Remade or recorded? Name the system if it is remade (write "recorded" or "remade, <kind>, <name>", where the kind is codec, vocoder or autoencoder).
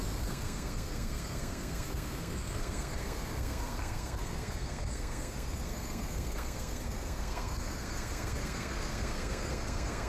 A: remade, codec, SNAC